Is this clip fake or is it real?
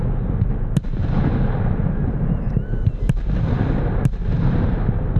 real